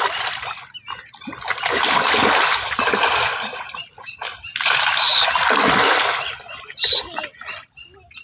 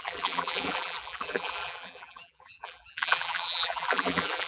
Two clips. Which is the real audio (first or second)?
first